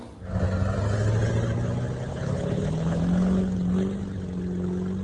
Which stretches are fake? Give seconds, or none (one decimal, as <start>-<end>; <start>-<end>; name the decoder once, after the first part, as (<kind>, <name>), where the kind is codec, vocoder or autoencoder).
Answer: 2.1-3.0 (codec, HILCodec)

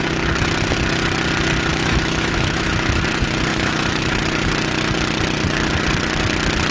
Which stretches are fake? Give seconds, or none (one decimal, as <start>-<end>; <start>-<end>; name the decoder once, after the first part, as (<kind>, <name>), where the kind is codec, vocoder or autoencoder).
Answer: 1.7-3.0 (autoencoder, DAC-VAE); 3.5-4.2